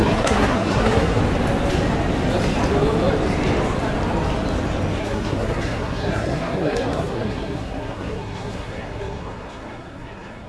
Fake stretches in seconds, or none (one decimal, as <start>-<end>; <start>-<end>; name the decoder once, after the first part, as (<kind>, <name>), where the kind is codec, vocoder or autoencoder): 0.0-1.2 (codec, SNAC); 5.0-10.5

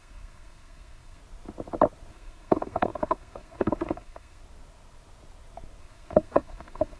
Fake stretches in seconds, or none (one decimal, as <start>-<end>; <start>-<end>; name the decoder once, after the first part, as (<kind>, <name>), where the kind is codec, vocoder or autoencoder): 0.0-1.2 (codec, SNAC); 2.1-4.4; 5.8-7.0

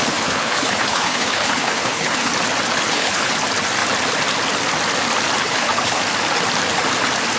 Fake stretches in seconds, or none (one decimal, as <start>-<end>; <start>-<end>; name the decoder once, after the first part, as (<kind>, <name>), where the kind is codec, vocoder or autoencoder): 0.0-2.3 (codec, HILCodec); 2.8-3.3; 5.4-6.0

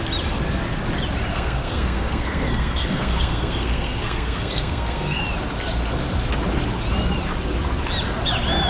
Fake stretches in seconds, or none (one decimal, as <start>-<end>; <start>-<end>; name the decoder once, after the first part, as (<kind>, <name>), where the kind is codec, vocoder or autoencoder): 1.3-5.2 (codec, SNAC)

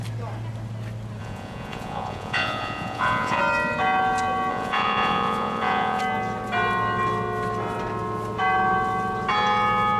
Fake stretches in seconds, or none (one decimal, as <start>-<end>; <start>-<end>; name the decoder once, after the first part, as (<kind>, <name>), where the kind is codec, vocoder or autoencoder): 1.2-3.4 (vocoder, Vocos); 4.5-6.0

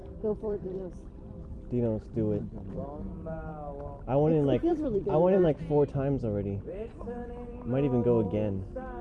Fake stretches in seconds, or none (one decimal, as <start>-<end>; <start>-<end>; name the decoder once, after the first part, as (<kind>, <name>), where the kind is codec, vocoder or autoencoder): 0.0-1.6 (vocoder, BigVGAN v2); 4.7-5.6

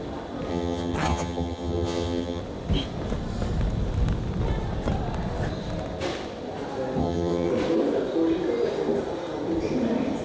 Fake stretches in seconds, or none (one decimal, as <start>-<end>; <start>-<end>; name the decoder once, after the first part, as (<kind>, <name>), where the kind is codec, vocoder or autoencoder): 0.5-2.4 (vocoder, HiFi-GAN); 7.0-7.5